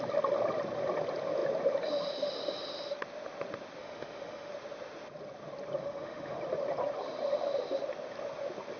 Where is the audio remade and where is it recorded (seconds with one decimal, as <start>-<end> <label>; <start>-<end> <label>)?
0.0-3.8 recorded; 3.8-4.5 remade; 4.5-5.8 recorded; 5.8-6.4 remade; 6.4-8.8 recorded